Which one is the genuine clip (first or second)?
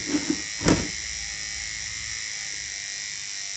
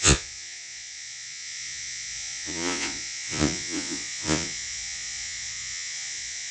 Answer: first